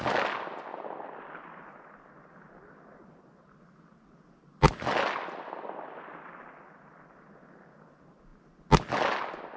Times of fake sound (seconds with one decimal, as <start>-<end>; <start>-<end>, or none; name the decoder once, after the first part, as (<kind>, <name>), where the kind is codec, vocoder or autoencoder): 0.7-1.4 (vocoder, BigVGAN v2); 4.4-6.6